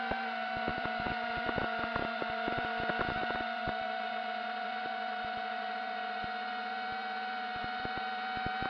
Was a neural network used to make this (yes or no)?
yes